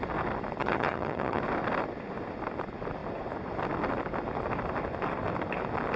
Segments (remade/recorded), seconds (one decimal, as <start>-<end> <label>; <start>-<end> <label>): 0.0-0.6 recorded; 0.6-1.4 remade; 1.4-6.0 recorded